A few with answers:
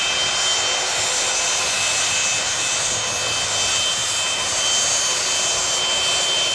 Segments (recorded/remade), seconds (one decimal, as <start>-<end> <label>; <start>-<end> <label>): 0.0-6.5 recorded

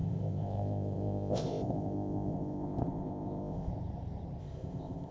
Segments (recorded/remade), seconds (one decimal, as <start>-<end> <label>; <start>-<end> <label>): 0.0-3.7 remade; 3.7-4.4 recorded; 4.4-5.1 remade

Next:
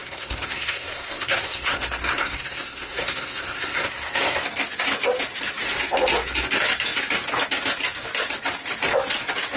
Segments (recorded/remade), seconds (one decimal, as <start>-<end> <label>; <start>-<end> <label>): 0.0-4.4 remade; 4.4-9.6 recorded